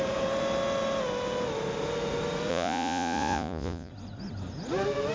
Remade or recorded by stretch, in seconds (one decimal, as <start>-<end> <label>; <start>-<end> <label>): 0.0-2.5 recorded; 2.5-3.9 remade; 3.9-5.1 recorded